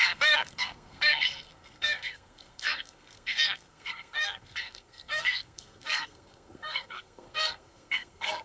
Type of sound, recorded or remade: remade